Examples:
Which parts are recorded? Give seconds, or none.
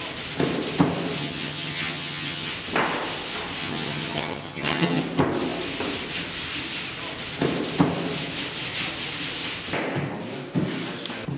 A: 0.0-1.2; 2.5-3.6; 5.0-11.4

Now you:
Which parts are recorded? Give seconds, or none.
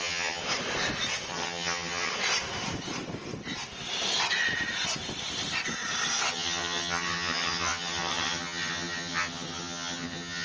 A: 0.4-1.3; 2.1-6.3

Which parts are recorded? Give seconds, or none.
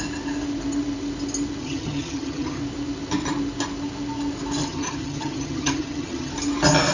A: 0.0-1.6; 2.6-4.6; 6.3-6.9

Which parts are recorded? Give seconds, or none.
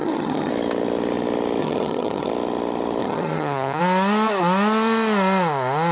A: 0.5-1.6; 2.3-3.0; 3.8-5.9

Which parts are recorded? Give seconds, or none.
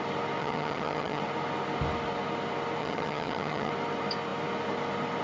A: 0.0-0.4; 1.2-2.8; 3.7-5.2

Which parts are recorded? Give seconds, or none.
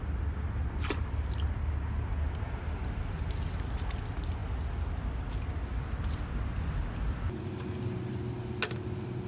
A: 0.0-9.3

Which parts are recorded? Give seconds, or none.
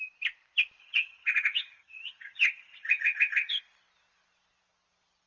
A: 0.0-0.8; 3.6-5.3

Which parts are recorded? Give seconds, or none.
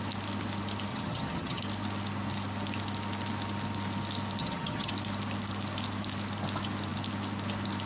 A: 0.0-0.9; 1.6-4.4; 4.9-7.9